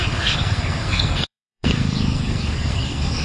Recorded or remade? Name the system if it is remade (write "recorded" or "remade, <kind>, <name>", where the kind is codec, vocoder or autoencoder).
remade, codec, SNAC